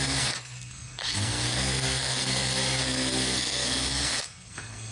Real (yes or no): no